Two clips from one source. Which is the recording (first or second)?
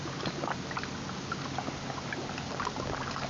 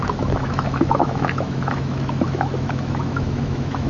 first